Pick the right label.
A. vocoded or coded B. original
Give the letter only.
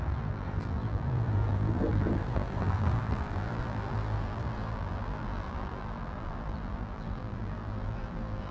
A